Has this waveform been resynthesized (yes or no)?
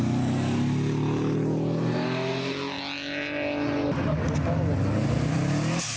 no